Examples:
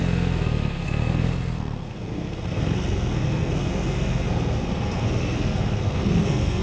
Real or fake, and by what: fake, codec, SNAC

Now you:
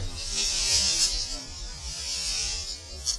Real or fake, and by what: real